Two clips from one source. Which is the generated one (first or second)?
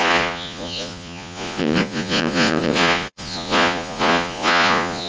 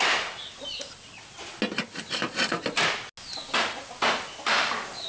first